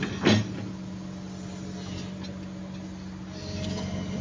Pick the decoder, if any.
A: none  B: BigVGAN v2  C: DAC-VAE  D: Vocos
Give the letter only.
A